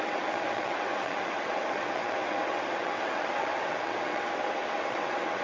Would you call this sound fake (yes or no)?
yes